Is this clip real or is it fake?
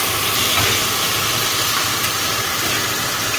fake